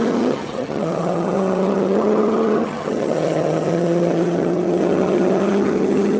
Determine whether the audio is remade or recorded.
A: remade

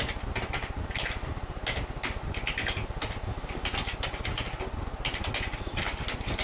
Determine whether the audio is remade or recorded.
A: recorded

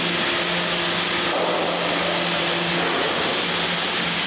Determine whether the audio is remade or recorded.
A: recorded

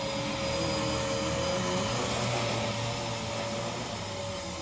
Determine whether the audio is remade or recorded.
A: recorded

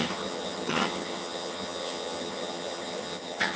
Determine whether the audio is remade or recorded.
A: remade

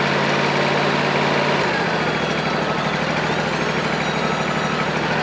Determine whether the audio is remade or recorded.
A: recorded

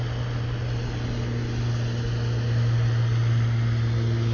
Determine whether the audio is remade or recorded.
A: recorded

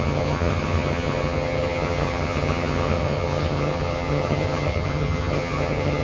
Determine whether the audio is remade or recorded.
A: remade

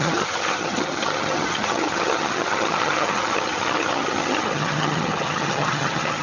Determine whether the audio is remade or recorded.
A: remade